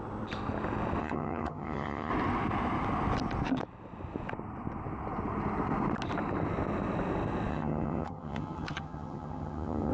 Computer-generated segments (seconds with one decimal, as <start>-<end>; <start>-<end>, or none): 1.0-2.1; 7.5-9.9